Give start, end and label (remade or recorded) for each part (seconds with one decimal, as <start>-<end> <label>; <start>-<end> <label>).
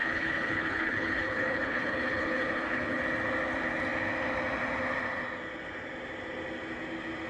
0.0-3.0 remade; 3.0-7.3 recorded